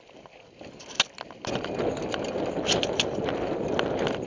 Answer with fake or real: real